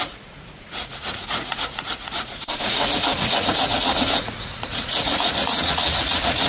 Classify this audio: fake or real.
fake